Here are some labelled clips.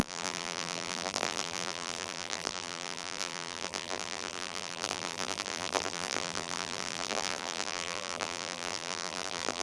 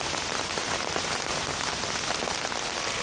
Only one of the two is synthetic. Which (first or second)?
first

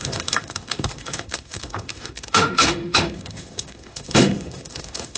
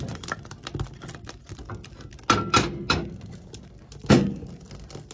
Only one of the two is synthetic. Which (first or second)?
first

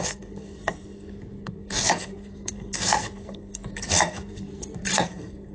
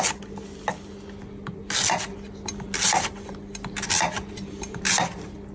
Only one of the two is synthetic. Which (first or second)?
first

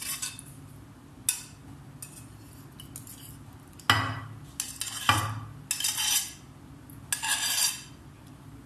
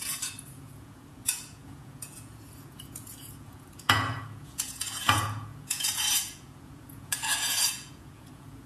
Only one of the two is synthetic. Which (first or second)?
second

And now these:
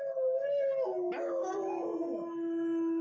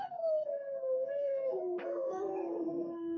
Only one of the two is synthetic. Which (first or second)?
second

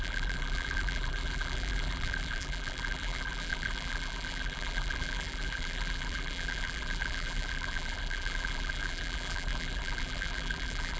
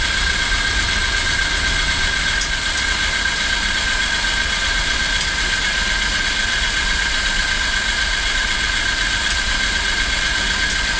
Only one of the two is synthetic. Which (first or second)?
first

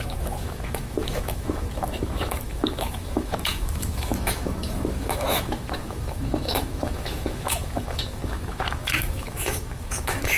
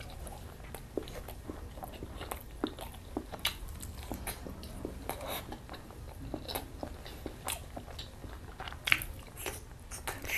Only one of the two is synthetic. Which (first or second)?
first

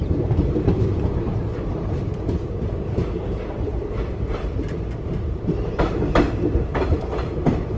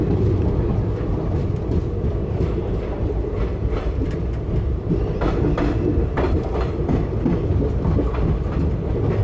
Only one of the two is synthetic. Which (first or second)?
first